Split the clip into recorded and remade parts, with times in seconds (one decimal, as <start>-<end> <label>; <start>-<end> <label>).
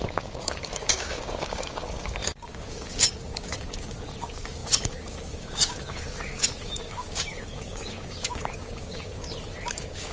0.0-9.2 remade; 9.2-9.7 recorded; 9.7-10.1 remade